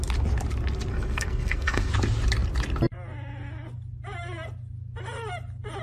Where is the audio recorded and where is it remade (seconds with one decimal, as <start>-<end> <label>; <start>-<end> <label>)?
0.0-0.9 recorded; 0.9-1.9 remade; 1.9-5.8 recorded